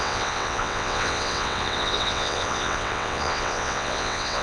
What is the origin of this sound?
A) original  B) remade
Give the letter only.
B